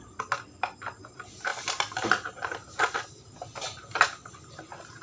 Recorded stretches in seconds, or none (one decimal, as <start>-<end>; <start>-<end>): 0.0-5.0